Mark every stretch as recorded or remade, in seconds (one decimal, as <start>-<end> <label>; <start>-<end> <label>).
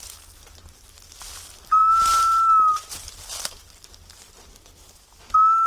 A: 0.0-5.7 recorded